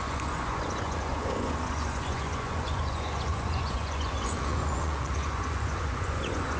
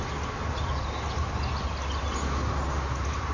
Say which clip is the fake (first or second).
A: first